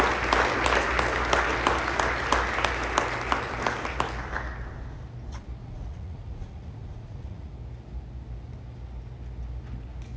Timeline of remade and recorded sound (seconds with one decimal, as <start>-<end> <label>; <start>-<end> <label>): 0.0-5.6 recorded; 5.6-7.5 remade; 7.5-10.2 recorded